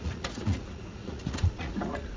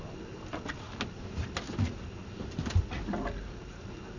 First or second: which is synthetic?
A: first